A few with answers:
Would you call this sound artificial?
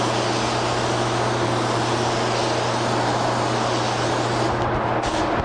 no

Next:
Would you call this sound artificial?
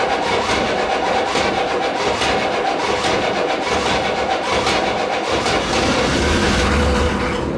no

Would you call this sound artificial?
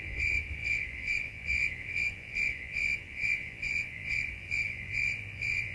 yes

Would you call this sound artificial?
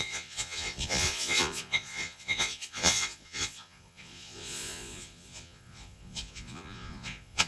yes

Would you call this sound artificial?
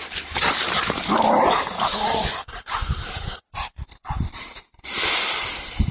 no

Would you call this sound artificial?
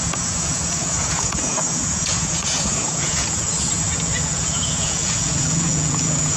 yes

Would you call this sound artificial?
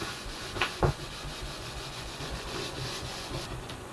yes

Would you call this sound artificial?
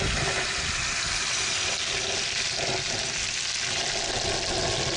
no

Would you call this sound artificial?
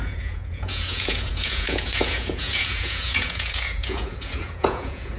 yes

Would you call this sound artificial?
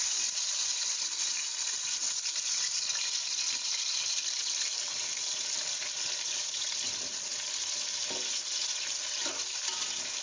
no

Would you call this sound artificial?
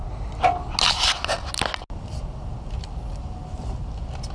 no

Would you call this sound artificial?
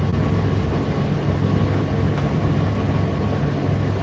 no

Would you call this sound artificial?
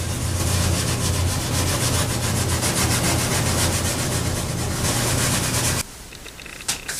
no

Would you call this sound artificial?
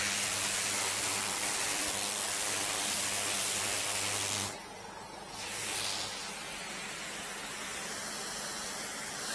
no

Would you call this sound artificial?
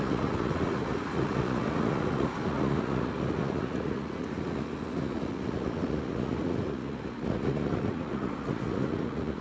yes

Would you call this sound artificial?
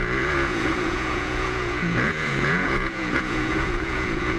yes